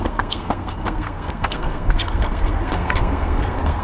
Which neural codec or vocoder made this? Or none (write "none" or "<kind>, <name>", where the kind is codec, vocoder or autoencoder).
codec, SNAC